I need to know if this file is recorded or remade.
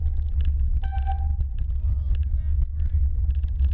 recorded